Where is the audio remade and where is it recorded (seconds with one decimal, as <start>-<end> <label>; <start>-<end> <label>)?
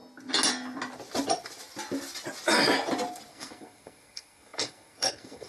0.0-3.3 recorded; 3.3-5.5 remade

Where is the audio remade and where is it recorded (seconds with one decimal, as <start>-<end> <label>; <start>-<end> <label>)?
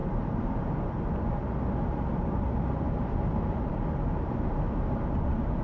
0.0-1.0 remade; 1.0-2.1 recorded; 2.1-3.7 remade; 3.7-5.6 recorded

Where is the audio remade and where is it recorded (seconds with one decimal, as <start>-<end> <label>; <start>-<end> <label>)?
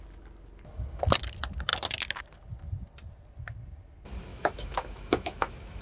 0.0-4.3 recorded; 4.3-5.8 remade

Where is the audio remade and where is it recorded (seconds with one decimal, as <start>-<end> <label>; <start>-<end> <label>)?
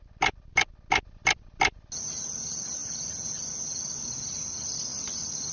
0.0-5.5 recorded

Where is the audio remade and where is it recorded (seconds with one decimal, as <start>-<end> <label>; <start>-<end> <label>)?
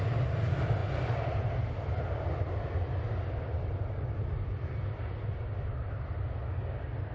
0.0-7.1 recorded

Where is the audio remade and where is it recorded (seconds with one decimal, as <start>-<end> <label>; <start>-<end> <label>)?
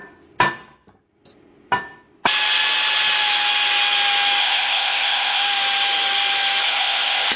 0.0-4.4 recorded; 4.4-5.4 remade; 5.4-6.6 recorded; 6.6-7.4 remade